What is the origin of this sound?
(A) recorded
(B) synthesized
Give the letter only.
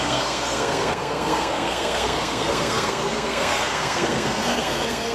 B